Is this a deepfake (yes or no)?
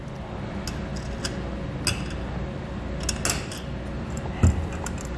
no